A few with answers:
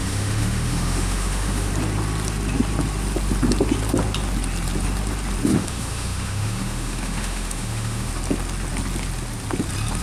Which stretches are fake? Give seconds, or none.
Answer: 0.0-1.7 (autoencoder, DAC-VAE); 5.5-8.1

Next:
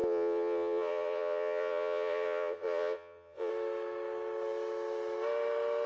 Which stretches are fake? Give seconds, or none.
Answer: 0.0-3.5 (vocoder, Vocos)